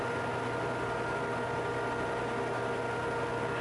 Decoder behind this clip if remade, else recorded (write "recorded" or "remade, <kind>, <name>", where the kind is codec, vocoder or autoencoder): recorded